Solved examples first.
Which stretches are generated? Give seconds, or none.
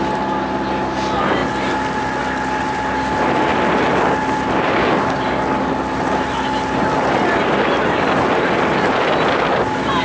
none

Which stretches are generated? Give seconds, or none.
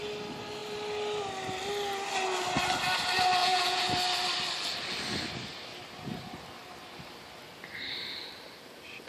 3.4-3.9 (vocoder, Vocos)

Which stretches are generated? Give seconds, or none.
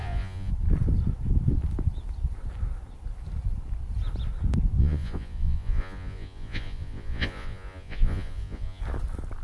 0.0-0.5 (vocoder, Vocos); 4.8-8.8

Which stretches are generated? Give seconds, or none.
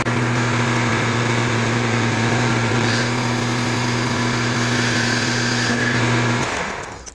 0.9-3.0 (vocoder, Vocos)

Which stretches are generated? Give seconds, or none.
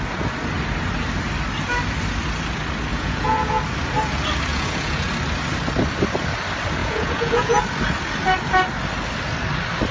2.9-3.6 (vocoder, Vocos); 4.5-5.1; 6.8-7.6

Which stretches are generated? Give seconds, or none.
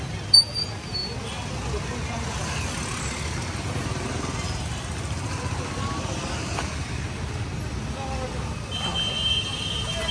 none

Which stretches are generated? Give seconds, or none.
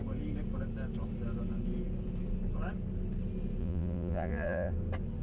3.6-4.7 (vocoder, Vocos)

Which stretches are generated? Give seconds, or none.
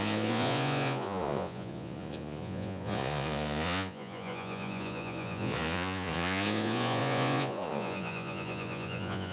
0.0-9.3 (vocoder, Vocos)